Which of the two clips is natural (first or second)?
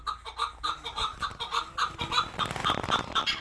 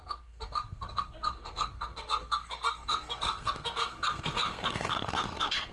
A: first